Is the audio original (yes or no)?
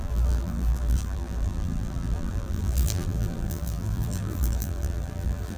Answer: no